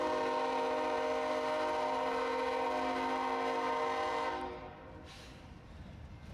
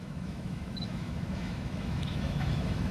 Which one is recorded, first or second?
first